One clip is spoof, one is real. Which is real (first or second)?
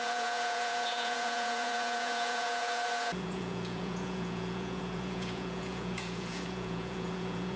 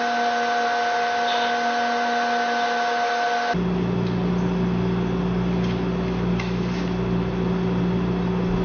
second